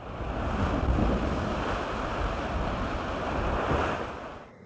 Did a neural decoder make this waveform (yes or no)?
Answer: no